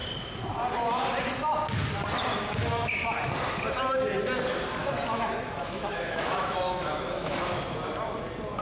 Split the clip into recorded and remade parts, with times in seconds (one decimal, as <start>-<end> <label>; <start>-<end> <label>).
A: 0.0-2.3 recorded; 2.3-2.9 remade; 2.9-4.8 recorded; 4.8-7.6 remade; 7.6-8.6 recorded